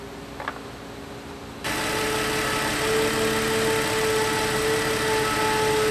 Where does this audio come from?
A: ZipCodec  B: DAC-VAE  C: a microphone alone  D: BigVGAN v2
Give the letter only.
C